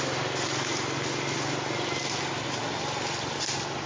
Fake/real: real